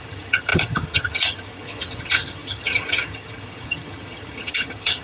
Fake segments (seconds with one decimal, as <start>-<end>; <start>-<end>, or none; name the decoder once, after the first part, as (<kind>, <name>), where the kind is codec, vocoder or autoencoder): 0.0-5.0 (vocoder, HiFi-GAN)